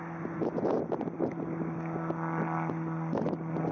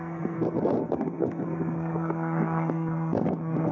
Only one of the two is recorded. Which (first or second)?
first